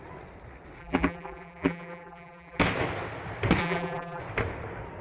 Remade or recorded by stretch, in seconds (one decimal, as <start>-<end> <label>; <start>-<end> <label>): 0.0-0.8 recorded; 0.8-2.6 remade; 2.6-3.6 recorded; 3.6-4.2 remade; 4.2-5.0 recorded